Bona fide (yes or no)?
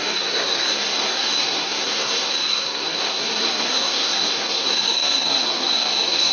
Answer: no